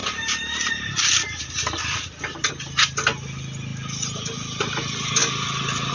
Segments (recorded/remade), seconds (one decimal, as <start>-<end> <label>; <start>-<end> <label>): 0.0-2.5 remade; 2.5-5.9 recorded